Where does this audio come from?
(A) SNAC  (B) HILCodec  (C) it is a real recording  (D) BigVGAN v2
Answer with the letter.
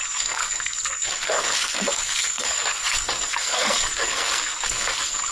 A